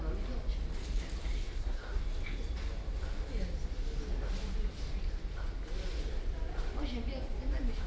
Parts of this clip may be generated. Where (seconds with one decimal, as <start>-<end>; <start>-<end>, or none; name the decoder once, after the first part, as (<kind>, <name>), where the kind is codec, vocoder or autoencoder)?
1.4-2.0 (codec, SNAC)